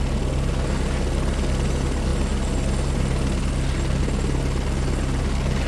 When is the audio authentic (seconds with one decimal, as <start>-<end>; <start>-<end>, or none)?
0.0-5.7